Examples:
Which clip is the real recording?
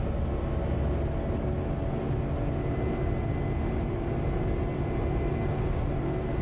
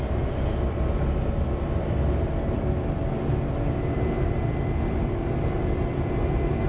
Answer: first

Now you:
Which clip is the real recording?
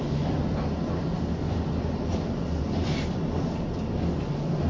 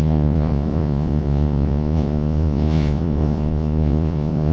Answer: first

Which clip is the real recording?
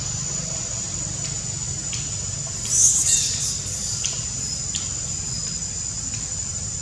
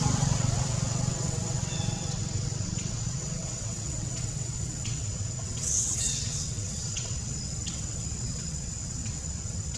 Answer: first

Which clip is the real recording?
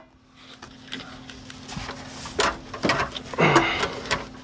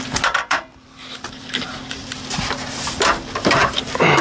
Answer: first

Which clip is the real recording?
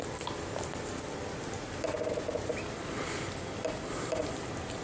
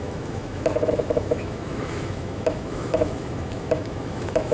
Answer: first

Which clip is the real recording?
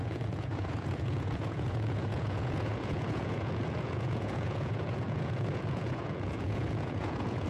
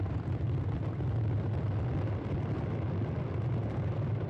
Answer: second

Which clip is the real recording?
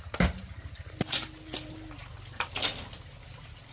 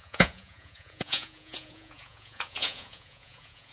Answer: first